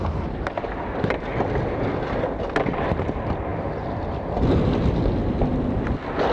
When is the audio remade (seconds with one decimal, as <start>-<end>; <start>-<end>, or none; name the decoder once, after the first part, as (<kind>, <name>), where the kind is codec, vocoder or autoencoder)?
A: none